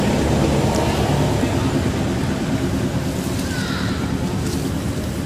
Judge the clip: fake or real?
real